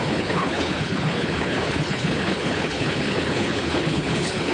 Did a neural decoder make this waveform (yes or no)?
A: yes